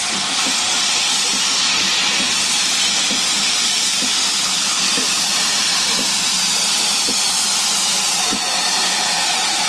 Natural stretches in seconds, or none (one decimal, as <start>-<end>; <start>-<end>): 0.0-4.3; 4.8-9.7